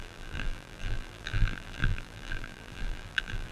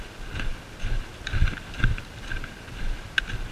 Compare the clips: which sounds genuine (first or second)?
second